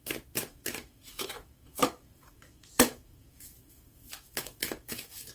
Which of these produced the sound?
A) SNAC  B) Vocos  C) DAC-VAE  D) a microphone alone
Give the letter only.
C